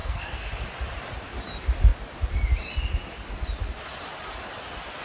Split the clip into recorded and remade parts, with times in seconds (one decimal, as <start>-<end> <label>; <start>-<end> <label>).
0.0-0.5 remade; 0.5-5.0 recorded